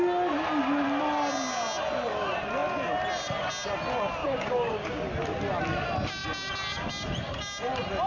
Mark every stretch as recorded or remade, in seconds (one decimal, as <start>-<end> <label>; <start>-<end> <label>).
0.0-4.2 recorded; 4.2-5.1 remade; 5.1-8.1 recorded